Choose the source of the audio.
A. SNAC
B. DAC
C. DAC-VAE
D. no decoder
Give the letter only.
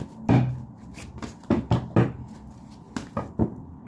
D